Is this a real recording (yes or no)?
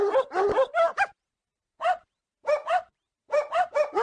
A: no